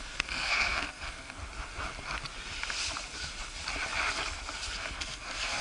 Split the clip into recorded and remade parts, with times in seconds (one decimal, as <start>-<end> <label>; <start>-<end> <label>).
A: 0.0-1.4 remade; 1.4-4.8 recorded; 4.8-5.6 remade